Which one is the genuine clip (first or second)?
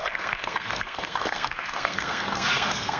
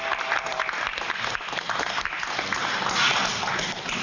second